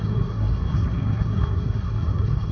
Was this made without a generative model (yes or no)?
no